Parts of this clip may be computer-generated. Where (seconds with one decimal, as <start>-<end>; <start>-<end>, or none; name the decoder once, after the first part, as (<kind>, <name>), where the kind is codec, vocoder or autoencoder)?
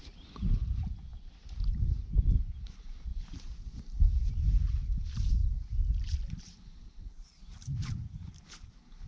0.0-5.4 (vocoder, BigVGAN v2); 6.4-9.1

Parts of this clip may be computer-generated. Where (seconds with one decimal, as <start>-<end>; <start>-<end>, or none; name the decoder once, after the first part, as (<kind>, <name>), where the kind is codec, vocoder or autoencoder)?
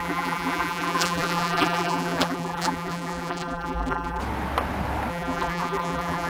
0.0-4.2 (vocoder, BigVGAN v2); 5.1-6.3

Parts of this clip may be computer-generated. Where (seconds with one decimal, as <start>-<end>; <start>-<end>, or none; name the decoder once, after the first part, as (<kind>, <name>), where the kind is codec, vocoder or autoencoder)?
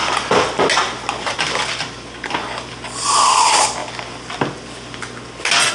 none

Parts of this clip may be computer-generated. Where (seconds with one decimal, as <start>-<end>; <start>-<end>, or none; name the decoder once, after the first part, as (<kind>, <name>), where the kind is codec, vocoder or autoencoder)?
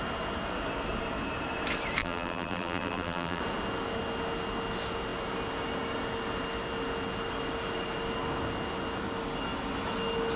2.0-3.4 (vocoder, BigVGAN v2)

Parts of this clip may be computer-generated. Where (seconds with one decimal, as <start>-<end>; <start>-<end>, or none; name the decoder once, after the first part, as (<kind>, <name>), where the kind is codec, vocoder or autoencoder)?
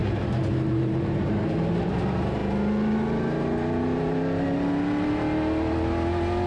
0.0-2.4 (vocoder, BigVGAN v2)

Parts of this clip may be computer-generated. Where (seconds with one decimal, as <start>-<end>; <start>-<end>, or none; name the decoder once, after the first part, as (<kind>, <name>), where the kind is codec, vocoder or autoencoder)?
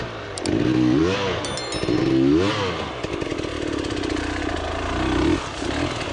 none